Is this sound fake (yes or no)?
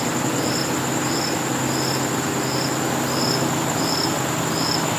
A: no